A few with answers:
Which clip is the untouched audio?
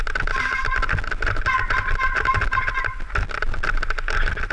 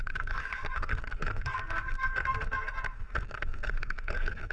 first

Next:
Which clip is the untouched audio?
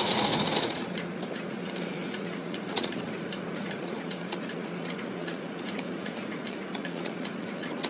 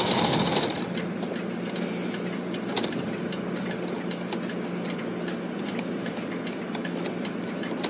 second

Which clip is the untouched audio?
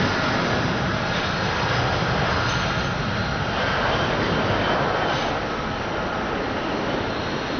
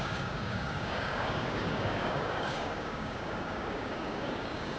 first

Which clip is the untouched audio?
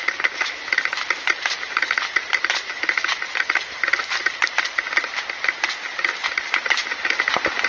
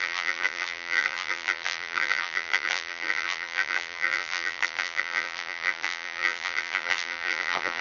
first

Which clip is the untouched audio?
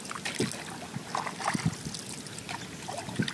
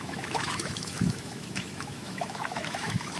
first